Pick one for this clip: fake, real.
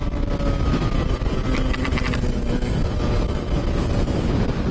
real